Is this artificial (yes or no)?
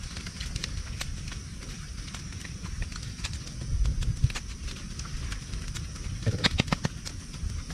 yes